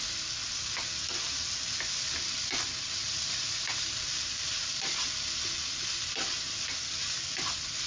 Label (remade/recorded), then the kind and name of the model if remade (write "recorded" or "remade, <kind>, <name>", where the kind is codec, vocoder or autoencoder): recorded